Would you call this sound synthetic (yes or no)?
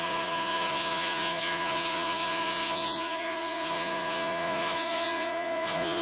yes